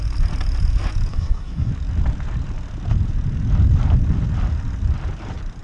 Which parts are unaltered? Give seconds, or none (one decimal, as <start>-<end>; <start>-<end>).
0.0-1.1; 1.7-5.6